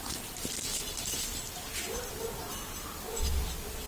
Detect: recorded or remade recorded